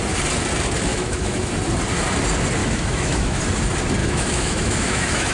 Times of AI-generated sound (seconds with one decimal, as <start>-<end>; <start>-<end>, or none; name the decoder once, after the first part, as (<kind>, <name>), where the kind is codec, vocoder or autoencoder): 0.9-1.5 (autoencoder, DAC-VAE); 2.6-3.4; 4.0-5.3